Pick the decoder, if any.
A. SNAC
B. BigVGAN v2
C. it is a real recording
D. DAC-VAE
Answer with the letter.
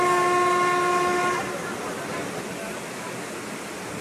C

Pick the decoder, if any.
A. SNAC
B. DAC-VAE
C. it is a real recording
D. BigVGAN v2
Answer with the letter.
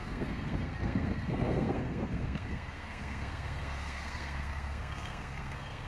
A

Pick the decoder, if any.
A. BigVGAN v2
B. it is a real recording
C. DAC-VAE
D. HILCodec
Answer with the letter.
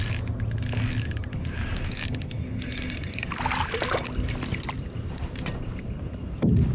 B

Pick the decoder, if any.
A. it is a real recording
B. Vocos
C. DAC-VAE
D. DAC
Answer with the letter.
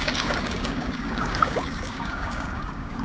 D